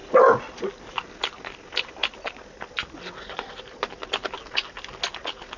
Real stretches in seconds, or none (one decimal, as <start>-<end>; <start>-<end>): 0.0-5.6